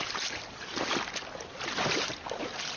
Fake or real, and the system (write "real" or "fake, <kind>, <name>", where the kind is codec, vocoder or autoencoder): real